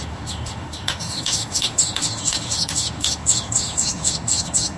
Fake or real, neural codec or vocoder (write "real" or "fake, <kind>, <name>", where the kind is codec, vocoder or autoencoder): fake, autoencoder, DAC-VAE